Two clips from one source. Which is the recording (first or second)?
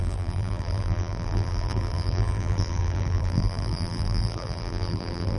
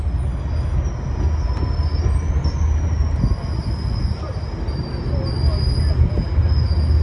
second